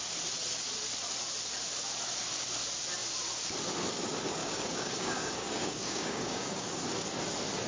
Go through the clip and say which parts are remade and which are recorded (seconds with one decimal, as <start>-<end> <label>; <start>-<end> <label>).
0.0-4.4 recorded; 4.4-6.8 remade; 6.8-7.7 recorded